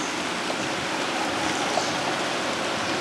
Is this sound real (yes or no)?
yes